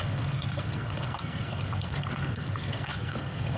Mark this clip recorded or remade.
remade